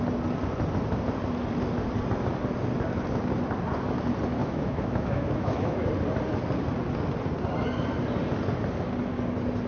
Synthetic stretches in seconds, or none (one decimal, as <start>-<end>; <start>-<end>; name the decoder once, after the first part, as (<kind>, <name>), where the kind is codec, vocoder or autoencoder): 4.4-5.9 (autoencoder, DAC-VAE)